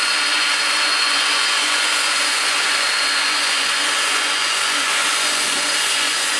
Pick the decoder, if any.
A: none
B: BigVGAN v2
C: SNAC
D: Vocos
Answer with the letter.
D